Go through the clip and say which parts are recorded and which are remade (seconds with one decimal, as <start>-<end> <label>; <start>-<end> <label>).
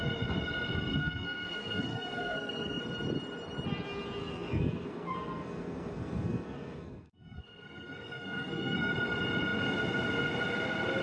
0.0-0.9 recorded; 0.9-2.8 remade; 2.8-4.2 recorded; 4.2-8.9 remade; 8.9-11.0 recorded